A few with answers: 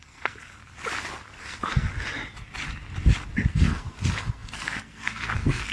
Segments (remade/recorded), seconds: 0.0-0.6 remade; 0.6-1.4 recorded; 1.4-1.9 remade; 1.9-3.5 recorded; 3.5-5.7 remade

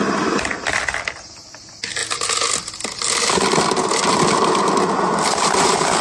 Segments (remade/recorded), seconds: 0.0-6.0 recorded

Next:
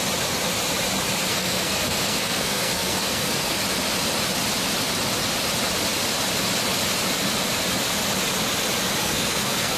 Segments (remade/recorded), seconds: 0.0-1.3 recorded; 1.3-3.6 remade; 3.6-9.0 recorded; 9.0-9.8 remade

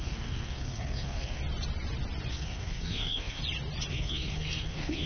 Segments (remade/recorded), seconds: 0.0-1.4 remade; 1.4-2.3 recorded; 2.3-3.4 remade; 3.4-3.9 recorded; 3.9-5.1 remade